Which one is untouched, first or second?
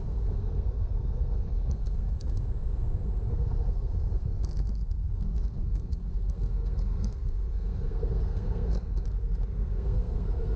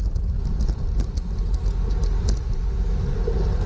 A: second